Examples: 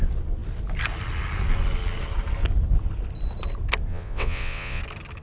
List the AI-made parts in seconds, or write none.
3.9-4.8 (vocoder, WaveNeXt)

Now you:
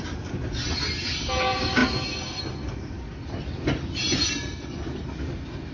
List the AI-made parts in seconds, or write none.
none